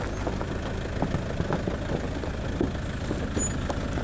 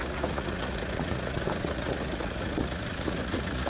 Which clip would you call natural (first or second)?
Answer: first